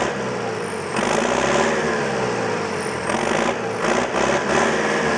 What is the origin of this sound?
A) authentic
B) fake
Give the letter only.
A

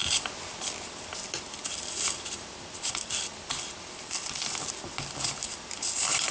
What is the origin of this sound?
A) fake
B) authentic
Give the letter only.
A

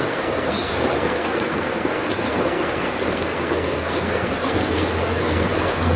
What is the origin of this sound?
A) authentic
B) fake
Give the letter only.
B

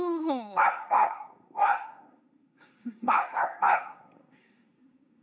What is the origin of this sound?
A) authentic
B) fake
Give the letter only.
B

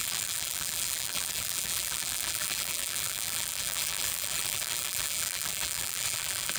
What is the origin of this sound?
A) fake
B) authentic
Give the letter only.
A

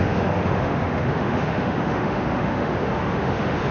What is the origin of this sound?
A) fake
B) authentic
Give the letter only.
A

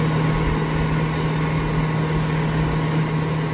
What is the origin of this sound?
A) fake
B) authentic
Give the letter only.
B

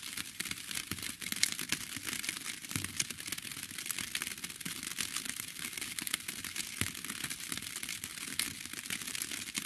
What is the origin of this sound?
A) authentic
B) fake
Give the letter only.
A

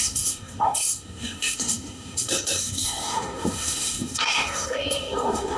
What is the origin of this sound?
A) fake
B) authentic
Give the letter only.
A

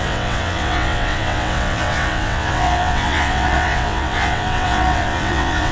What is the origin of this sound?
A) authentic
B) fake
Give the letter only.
B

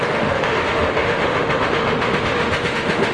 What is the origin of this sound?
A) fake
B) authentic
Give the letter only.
A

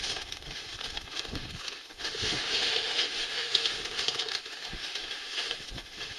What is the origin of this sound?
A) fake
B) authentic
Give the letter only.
A